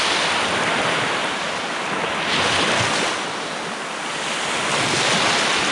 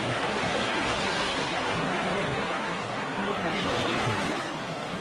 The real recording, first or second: first